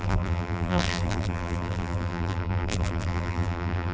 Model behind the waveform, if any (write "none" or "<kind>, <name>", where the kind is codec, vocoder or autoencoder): vocoder, BigVGAN v2